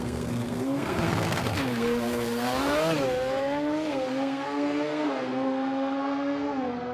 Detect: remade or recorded remade